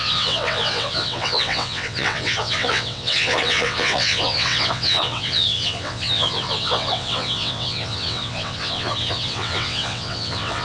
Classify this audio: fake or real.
fake